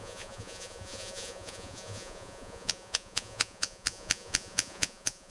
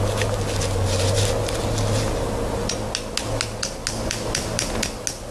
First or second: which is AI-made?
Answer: first